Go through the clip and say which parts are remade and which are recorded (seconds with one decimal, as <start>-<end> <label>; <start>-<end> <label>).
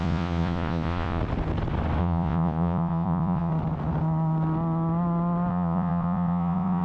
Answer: 0.0-1.2 remade; 1.2-2.0 recorded; 2.0-3.5 remade; 3.5-5.5 recorded; 5.5-6.8 remade